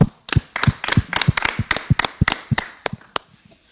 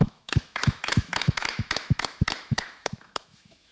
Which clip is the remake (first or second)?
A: second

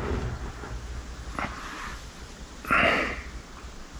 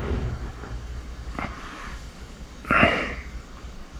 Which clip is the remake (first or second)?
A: second